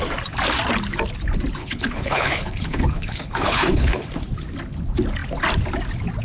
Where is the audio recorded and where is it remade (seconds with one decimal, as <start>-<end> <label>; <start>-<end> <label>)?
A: 0.0-1.6 recorded; 1.6-4.1 remade; 4.1-6.2 recorded